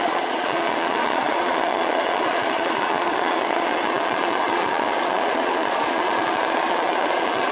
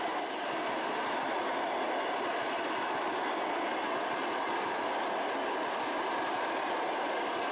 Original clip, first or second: second